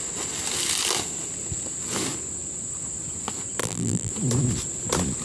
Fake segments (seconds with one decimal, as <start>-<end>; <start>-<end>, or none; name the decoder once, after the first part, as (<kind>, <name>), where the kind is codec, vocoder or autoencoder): 3.6-4.1 (vocoder, BigVGAN v2)